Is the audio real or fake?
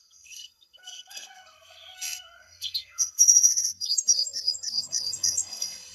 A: fake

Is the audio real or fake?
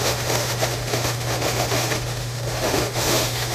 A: fake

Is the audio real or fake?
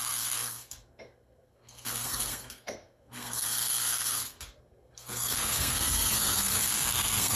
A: fake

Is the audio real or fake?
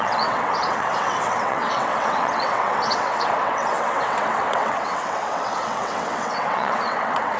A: fake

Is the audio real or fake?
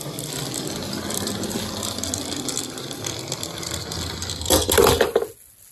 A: real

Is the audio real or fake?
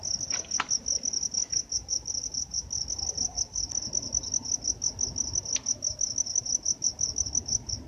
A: real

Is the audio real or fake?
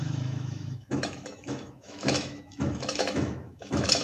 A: fake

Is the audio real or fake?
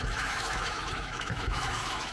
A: fake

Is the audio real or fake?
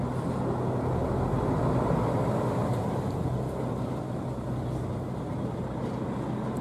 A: real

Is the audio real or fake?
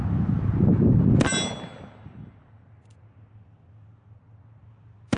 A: real